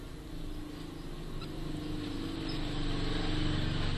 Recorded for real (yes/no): yes